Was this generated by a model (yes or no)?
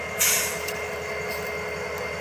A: no